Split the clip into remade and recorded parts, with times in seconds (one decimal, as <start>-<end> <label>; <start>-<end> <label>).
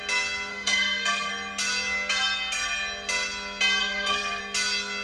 0.0-0.5 recorded; 0.5-1.3 remade; 1.3-3.8 recorded; 3.8-4.4 remade; 4.4-5.0 recorded